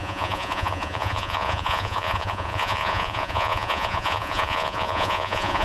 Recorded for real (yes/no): no